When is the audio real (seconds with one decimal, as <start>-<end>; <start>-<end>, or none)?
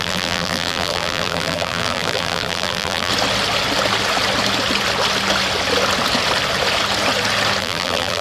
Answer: 3.1-7.6